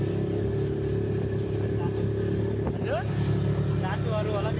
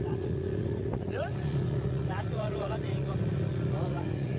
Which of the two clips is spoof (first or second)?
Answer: second